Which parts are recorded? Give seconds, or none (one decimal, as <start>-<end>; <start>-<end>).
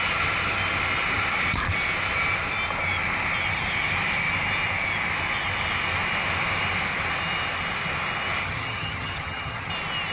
0.0-8.4; 9.7-10.1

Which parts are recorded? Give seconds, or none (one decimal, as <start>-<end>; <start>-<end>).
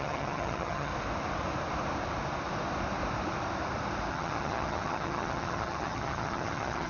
0.9-4.1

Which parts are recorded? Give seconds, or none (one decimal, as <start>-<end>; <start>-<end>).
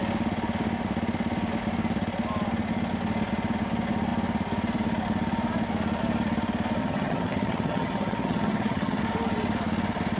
0.0-6.8; 9.0-10.2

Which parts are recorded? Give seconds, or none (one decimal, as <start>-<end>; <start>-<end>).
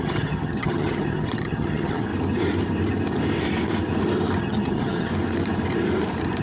2.1-4.4; 5.1-6.4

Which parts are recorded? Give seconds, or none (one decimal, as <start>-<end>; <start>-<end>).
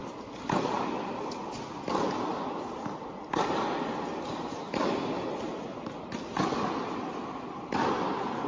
0.0-8.5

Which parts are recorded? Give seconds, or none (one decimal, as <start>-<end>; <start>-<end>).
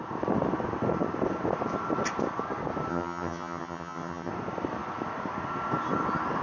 0.0-2.9; 4.3-6.4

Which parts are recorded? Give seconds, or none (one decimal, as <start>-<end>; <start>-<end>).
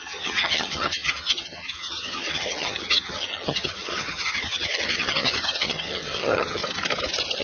6.6-7.4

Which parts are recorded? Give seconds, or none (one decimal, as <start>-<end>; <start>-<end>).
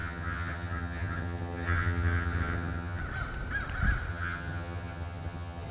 3.0-4.1